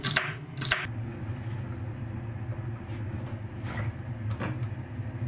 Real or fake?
real